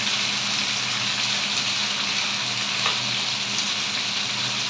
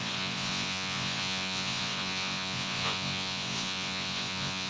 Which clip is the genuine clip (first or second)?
first